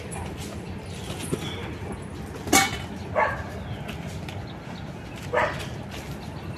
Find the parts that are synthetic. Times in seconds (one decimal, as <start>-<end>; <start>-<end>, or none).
none